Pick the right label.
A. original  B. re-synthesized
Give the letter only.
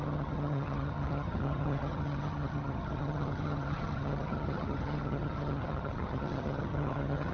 B